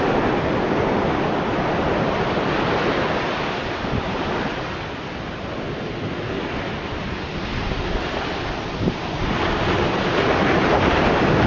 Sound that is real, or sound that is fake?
real